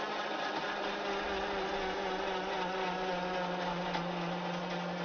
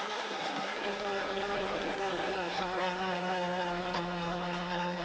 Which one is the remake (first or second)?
second